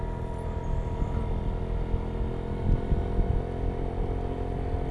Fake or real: real